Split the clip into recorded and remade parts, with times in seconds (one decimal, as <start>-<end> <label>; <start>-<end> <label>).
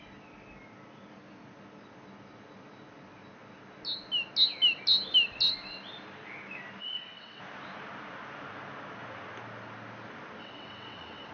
0.0-6.8 recorded; 6.8-7.4 remade; 7.4-10.4 recorded; 10.4-11.3 remade